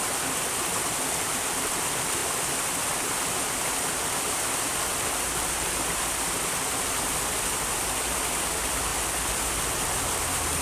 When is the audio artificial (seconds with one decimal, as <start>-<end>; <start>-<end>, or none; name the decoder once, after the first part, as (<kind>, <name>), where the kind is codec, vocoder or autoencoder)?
0.0-2.2 (vocoder, BigVGAN v2); 3.3-8.9; 9.8-10.6